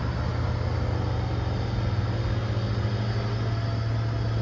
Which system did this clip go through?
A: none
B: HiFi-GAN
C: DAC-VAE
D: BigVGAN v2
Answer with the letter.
A